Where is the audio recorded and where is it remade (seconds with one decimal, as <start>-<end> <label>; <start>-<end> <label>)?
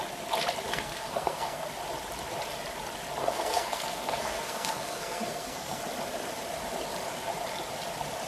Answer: 0.0-0.7 recorded; 0.7-1.7 remade; 1.7-3.2 recorded; 3.2-5.8 remade; 5.8-8.3 recorded